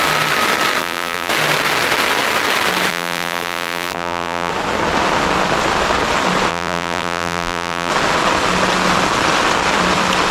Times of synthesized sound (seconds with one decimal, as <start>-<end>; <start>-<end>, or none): 0.8-1.3; 2.9-4.5; 6.5-7.9